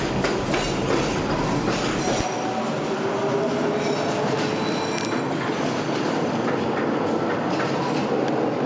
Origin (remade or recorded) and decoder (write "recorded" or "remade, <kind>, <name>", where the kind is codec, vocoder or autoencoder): recorded